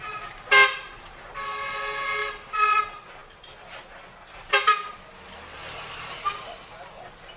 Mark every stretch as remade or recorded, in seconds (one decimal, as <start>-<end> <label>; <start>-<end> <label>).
0.0-2.2 recorded; 2.2-2.8 remade; 2.8-7.4 recorded